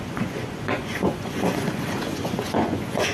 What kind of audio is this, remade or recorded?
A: remade